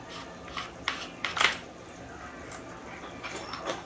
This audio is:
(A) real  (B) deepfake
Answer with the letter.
A